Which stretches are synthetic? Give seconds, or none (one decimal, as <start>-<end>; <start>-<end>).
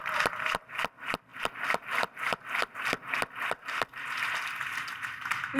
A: none